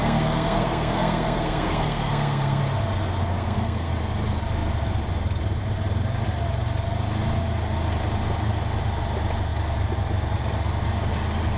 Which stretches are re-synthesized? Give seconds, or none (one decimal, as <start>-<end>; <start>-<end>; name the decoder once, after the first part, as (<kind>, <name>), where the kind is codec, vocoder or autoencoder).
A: 0.0-2.6 (codec, SNAC); 3.3-3.9